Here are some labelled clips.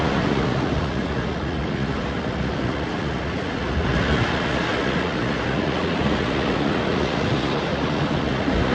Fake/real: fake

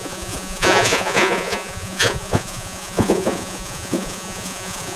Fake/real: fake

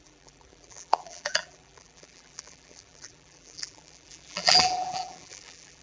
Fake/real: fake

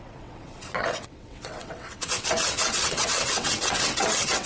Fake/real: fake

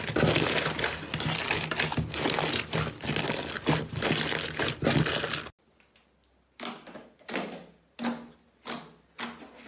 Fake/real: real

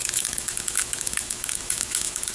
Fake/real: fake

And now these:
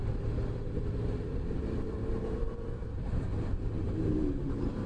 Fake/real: fake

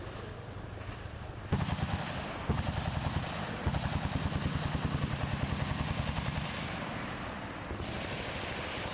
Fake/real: real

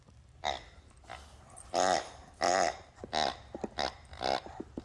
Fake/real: fake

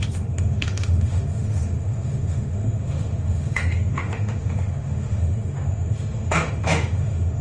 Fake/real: fake